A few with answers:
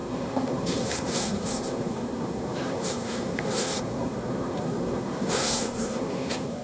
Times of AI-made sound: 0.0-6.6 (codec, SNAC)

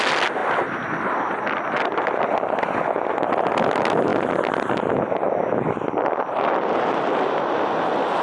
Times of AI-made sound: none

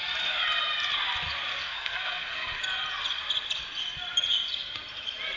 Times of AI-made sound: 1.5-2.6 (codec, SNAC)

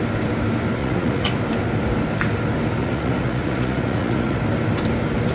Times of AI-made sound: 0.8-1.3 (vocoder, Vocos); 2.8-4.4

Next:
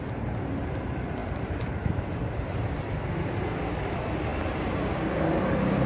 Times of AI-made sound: 1.2-2.6 (vocoder, BigVGAN v2); 4.3-4.9

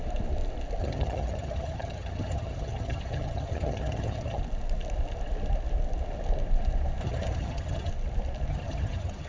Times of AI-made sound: 0.8-4.4 (vocoder, HiFi-GAN); 7.0-7.9; 8.5-9.3

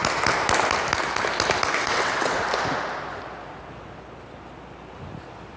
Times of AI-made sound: 1.7-2.4 (vocoder, WaveNeXt)

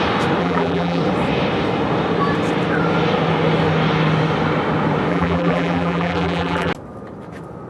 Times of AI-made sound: 0.4-1.0 (vocoder, BigVGAN v2); 5.1-6.7